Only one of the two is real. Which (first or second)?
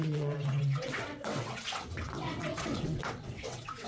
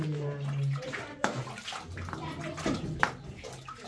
second